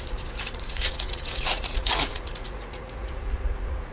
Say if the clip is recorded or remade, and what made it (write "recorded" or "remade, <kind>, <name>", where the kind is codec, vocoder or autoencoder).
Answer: remade, vocoder, Vocos